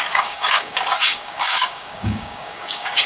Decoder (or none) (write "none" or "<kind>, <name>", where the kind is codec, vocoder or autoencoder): codec, DAC